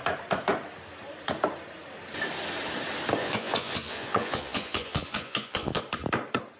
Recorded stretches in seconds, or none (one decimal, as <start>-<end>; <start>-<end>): 0.0-3.2; 5.8-6.6